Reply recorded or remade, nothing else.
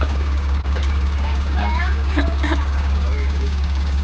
remade